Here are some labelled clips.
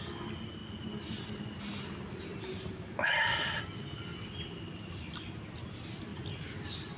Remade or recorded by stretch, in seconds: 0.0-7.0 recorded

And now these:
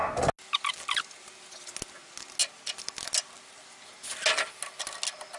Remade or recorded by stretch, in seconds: 0.0-5.4 recorded